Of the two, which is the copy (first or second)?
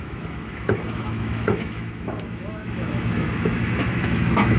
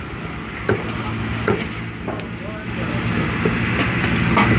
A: first